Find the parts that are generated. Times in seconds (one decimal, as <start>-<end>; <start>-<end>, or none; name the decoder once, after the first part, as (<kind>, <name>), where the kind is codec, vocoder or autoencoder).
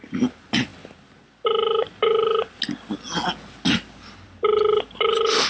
none